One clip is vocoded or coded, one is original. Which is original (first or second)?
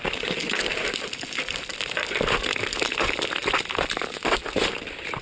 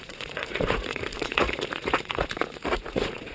first